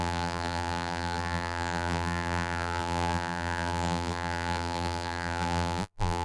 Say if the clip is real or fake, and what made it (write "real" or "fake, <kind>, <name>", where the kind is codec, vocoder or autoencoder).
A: fake, vocoder, BigVGAN v2